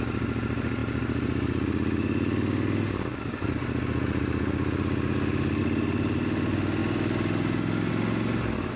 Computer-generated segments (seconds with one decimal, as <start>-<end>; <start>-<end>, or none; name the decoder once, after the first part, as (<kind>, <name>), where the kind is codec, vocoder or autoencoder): none